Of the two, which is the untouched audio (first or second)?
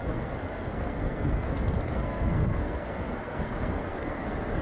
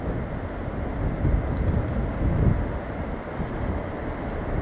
second